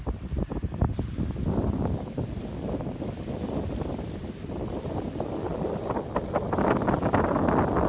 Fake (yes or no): no